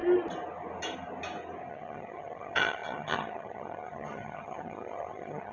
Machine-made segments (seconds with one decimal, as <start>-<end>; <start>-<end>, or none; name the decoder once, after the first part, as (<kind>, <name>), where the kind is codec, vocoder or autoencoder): 1.7-5.5 (vocoder, HiFi-GAN)